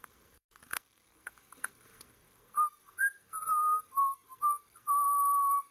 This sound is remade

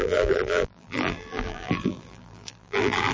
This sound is remade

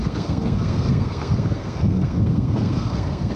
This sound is remade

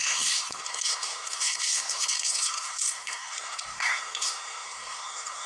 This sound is remade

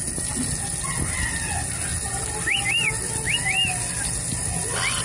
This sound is recorded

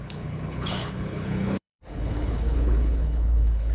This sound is remade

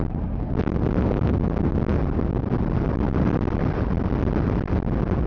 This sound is recorded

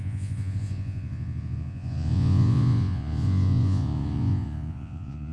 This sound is remade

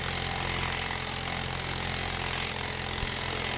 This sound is recorded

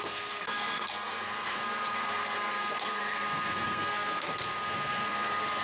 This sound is remade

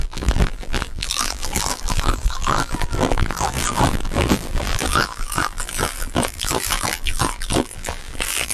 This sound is remade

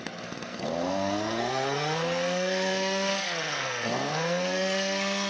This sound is remade